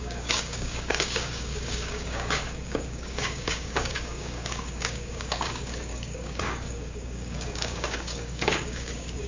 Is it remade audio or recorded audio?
remade